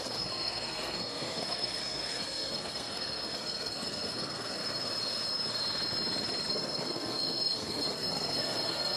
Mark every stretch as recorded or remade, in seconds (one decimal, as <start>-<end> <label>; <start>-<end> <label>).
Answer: 0.0-4.6 remade; 4.6-6.5 recorded; 6.5-9.0 remade